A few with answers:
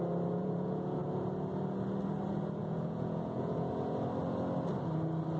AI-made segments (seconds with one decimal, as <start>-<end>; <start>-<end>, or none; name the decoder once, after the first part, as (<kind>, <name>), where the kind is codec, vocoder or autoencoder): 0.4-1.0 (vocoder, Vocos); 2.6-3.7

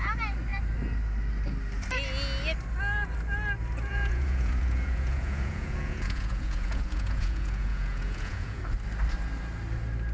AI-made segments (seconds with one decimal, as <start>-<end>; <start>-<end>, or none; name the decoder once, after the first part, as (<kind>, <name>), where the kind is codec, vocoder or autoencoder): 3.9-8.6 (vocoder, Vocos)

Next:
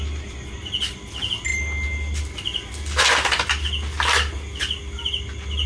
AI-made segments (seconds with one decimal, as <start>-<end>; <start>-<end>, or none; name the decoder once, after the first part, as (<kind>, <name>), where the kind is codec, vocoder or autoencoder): none